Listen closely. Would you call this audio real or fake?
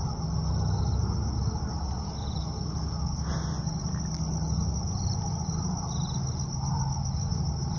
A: real